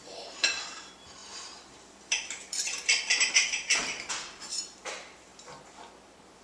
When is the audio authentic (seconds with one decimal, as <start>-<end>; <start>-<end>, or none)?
5.3-5.9